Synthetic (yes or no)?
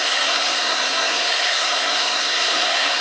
yes